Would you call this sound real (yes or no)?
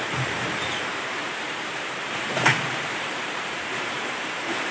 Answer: no